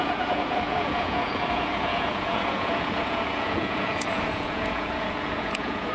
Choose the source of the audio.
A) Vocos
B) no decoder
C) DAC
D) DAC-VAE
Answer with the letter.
A